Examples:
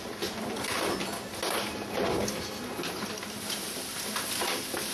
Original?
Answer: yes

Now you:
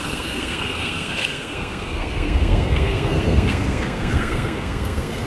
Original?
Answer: no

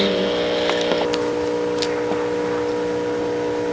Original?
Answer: yes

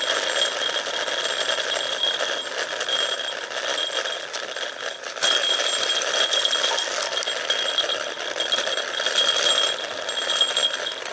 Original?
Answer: yes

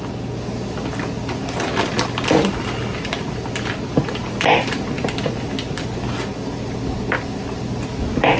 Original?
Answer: yes